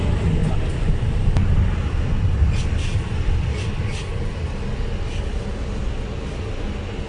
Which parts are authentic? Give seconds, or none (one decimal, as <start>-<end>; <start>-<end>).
0.0-7.1